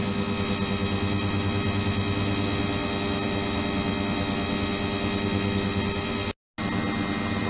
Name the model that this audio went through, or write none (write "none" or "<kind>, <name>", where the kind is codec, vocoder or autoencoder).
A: none